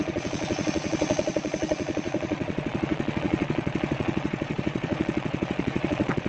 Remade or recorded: remade